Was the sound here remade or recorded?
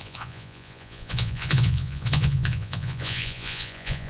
remade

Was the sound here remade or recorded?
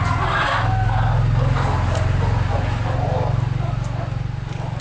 recorded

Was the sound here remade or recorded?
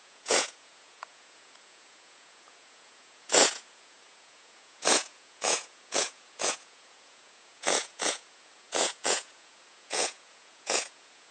remade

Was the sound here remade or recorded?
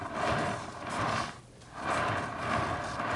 recorded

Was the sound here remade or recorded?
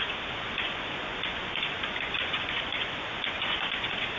remade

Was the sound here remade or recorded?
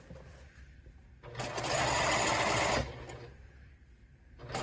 recorded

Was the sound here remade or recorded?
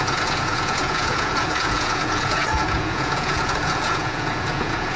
remade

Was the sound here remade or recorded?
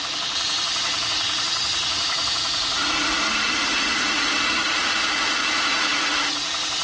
remade